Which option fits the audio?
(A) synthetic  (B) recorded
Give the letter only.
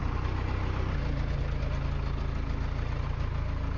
B